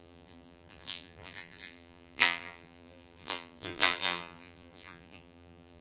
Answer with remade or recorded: remade